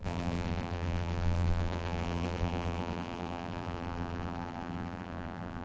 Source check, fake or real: fake